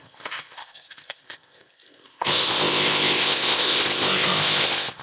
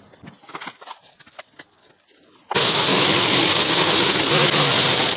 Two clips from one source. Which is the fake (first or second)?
first